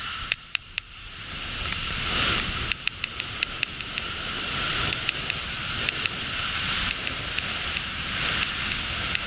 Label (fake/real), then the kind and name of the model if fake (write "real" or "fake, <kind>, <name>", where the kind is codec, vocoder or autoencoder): fake, vocoder, BigVGAN v2